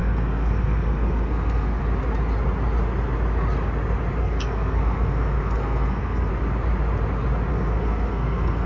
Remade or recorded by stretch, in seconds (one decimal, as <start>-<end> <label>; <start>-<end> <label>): 0.0-1.8 remade; 1.8-4.2 recorded; 4.2-6.3 remade; 6.3-7.5 recorded; 7.5-8.7 remade